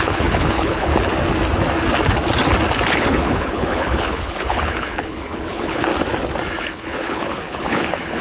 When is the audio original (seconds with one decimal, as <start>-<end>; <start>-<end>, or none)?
0.9-2.9; 5.9-6.6